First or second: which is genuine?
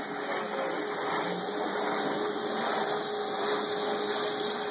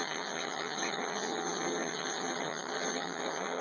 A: first